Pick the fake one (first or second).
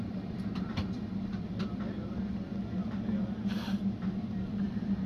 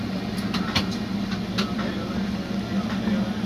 first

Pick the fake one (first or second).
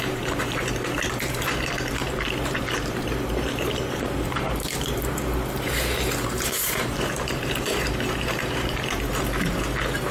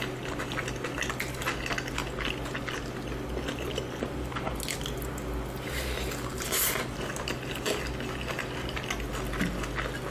first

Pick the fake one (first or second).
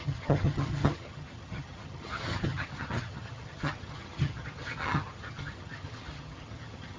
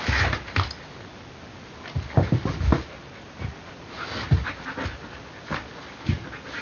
first